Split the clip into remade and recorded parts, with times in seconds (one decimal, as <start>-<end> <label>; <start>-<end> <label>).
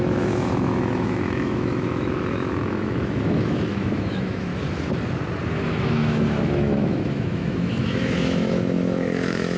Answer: 0.0-4.5 remade; 4.5-5.5 recorded; 5.5-9.6 remade